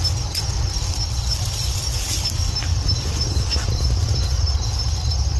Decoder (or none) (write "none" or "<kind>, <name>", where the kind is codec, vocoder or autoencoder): none